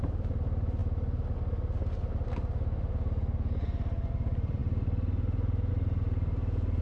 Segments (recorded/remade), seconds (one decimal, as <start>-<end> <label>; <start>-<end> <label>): 0.0-0.8 remade; 0.8-4.1 recorded; 4.1-6.8 remade